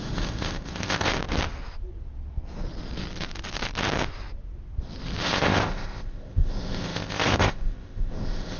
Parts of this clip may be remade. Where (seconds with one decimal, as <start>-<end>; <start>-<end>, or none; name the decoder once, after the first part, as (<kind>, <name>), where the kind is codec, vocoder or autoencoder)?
0.0-1.1 (codec, ZipCodec); 5.2-8.6